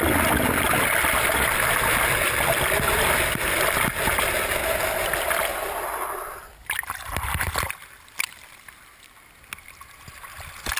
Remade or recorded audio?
recorded